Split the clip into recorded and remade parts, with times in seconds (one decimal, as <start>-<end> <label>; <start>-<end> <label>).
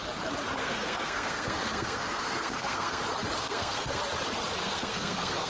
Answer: 0.0-0.6 recorded; 0.6-3.0 remade; 3.0-3.4 recorded; 3.4-4.0 remade; 4.0-4.6 recorded; 4.6-5.5 remade